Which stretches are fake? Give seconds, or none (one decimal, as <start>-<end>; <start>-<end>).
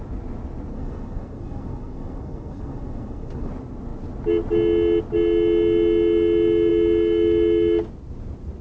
0.7-3.5